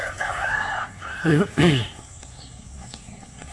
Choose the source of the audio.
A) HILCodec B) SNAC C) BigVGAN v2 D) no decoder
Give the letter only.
B